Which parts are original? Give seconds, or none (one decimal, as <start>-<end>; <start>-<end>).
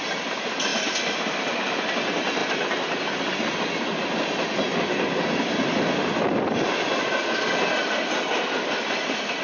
0.0-2.4; 3.0-9.4